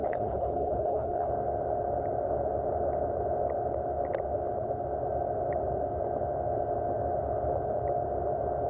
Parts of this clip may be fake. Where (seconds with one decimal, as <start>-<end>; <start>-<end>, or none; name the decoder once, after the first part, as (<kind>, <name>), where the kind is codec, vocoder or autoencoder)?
0.0-1.3 (codec, HILCodec)